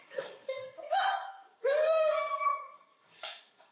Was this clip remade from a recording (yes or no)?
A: yes